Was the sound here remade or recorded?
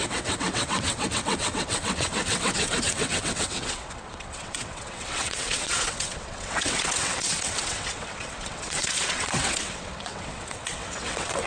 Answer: remade